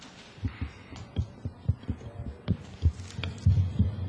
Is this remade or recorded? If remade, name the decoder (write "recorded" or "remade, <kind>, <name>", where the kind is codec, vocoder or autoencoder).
remade, vocoder, BigVGAN v2